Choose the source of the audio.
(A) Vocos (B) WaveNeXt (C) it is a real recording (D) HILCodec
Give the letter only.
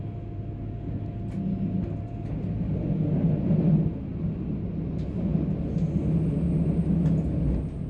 C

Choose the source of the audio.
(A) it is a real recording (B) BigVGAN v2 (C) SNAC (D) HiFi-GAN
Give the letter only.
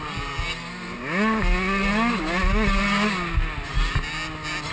A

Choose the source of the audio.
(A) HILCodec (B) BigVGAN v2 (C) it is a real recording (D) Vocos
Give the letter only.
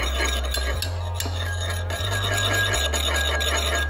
C